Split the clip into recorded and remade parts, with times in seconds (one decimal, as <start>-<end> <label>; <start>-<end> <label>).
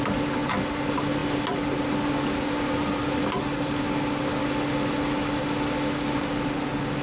0.0-7.0 recorded